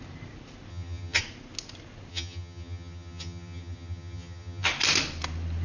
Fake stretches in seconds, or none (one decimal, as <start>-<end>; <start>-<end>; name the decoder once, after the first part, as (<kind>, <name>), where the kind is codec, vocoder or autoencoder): 0.7-1.2 (vocoder, HiFi-GAN); 2.1-4.7

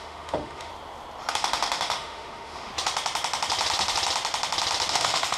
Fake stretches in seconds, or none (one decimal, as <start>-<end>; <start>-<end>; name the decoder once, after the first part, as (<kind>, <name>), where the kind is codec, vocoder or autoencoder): 0.0-0.7 (autoencoder, DAC-VAE); 1.3-2.7; 4.9-5.4

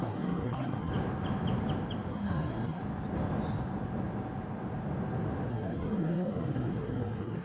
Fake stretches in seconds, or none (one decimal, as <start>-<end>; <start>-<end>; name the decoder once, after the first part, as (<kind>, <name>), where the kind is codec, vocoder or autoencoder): 0.0-0.9 (codec, SNAC); 2.1-2.8; 5.5-7.4

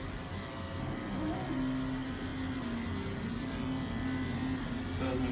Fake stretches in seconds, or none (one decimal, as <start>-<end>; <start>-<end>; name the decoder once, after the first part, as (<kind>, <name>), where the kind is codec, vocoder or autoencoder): none

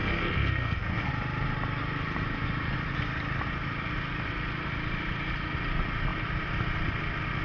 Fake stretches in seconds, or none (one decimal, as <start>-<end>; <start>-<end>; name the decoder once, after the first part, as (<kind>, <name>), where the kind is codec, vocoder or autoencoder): 0.0-1.1 (codec, SNAC)

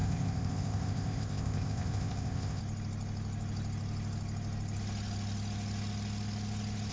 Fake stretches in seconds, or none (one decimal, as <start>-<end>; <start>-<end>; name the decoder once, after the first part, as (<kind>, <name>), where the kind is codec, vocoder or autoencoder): 0.0-2.6 (codec, ZipCodec)

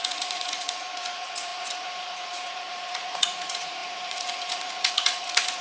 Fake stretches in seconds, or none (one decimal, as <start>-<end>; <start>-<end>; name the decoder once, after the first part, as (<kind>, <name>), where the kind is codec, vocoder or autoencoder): 0.0-5.6 (vocoder, Vocos)